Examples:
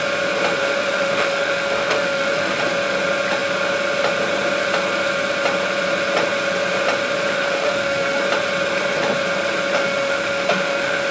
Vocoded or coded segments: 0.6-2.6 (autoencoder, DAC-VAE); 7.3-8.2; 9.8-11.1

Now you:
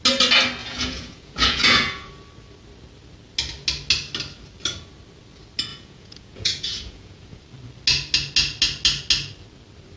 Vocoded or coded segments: 0.6-2.1 (vocoder, Vocos); 5.7-7.4

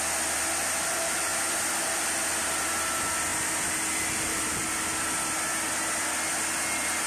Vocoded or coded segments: 1.3-2.2 (vocoder, BigVGAN v2)